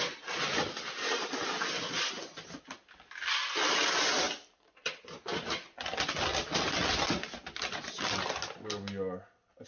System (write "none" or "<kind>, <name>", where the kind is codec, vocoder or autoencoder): none